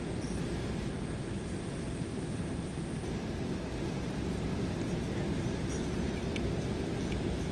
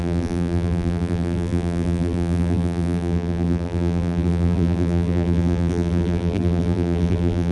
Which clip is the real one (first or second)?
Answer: first